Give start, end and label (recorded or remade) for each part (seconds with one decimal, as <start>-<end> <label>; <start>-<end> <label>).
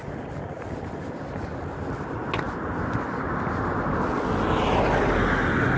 0.0-5.8 recorded